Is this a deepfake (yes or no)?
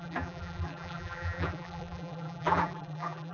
yes